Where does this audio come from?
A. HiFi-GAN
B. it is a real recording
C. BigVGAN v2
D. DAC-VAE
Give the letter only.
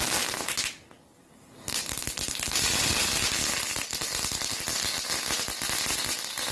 B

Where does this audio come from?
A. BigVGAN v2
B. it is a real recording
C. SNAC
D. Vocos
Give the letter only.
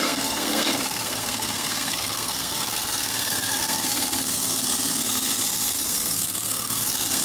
C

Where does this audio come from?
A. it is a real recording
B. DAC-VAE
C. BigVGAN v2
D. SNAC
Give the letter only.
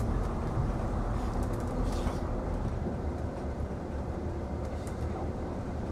C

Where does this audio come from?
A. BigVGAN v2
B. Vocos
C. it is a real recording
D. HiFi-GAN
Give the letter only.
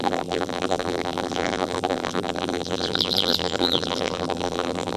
A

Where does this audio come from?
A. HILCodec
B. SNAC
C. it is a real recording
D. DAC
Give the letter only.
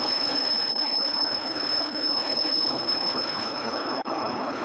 A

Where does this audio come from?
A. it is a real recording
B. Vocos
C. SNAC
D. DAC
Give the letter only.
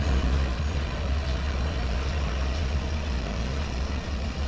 B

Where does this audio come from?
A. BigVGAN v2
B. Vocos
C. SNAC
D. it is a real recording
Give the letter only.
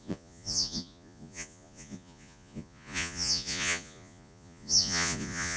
B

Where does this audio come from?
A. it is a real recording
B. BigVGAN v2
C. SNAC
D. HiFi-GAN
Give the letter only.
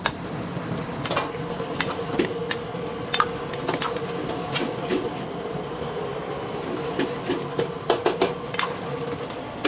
A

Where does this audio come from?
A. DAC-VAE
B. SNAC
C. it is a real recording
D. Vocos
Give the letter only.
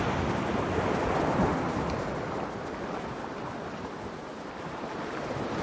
C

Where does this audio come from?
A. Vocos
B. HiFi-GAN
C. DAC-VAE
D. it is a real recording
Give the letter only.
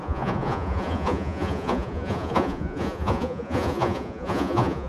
A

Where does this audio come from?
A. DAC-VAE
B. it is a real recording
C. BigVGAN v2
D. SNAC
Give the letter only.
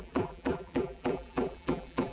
C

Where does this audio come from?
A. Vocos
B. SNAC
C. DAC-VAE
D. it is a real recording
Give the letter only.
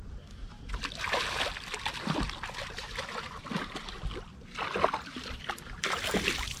D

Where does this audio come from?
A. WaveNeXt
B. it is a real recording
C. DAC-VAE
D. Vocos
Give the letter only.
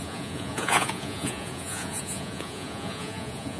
D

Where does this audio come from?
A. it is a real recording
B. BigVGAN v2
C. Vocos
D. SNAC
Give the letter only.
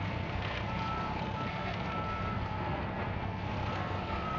D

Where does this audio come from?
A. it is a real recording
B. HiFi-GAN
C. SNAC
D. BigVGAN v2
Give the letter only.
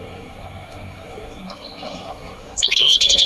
C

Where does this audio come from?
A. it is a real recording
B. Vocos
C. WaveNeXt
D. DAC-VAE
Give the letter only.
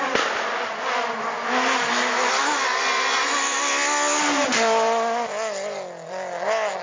A